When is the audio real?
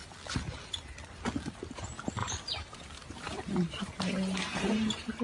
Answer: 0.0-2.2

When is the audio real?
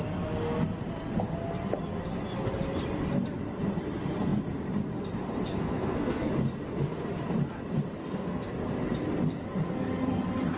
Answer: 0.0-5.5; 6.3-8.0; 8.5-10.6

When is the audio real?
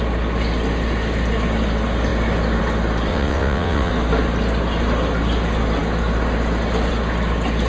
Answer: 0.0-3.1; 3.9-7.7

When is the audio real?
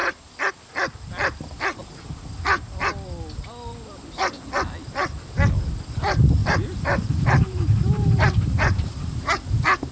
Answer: 0.0-6.4; 9.3-9.9